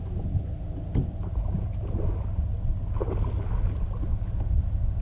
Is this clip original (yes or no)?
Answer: yes